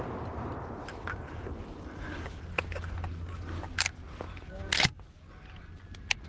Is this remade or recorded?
recorded